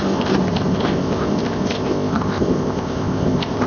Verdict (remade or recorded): remade